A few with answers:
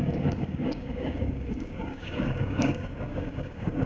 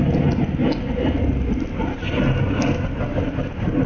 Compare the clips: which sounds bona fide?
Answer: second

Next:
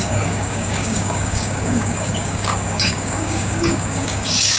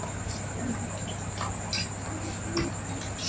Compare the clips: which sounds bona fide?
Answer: second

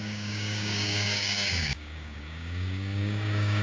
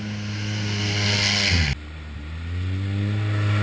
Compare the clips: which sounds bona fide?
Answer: second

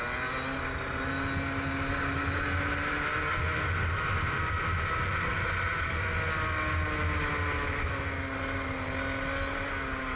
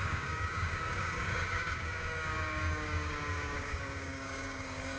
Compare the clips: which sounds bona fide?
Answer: first